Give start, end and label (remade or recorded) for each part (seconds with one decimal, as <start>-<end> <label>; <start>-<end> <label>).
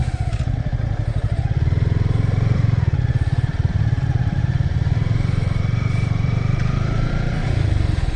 0.0-0.9 recorded; 0.9-8.2 remade